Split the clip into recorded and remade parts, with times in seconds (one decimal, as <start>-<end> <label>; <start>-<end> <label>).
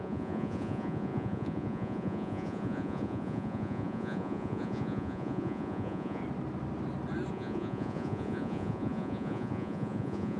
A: 0.0-6.2 remade; 6.2-7.3 recorded; 7.3-10.4 remade